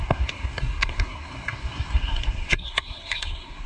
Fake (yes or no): yes